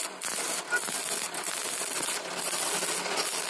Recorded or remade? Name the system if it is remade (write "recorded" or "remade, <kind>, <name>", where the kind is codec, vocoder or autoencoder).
recorded